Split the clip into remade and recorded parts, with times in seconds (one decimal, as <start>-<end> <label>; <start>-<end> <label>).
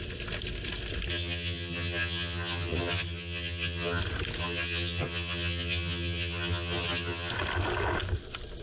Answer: 0.0-1.1 recorded; 1.1-4.0 remade; 4.0-4.4 recorded; 4.4-7.3 remade; 7.3-8.6 recorded